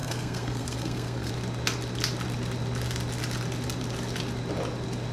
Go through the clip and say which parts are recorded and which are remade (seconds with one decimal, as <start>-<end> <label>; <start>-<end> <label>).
0.0-1.3 remade; 1.3-5.1 recorded